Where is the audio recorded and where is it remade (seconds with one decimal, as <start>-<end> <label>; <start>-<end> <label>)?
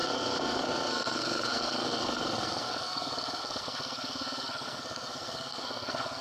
0.0-6.2 remade